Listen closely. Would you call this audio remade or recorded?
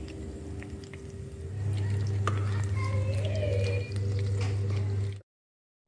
recorded